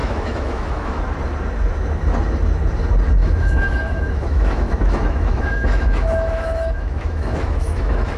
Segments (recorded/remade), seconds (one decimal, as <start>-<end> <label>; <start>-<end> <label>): 0.0-1.0 remade; 1.0-3.2 recorded; 3.2-8.2 remade